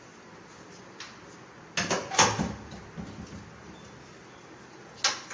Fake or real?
real